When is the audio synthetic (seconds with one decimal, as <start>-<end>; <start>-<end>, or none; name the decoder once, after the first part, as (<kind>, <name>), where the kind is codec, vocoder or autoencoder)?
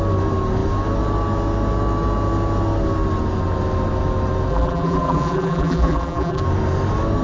4.5-6.4 (vocoder, BigVGAN v2)